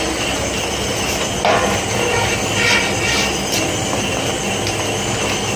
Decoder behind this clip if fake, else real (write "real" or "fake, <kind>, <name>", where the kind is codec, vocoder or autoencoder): real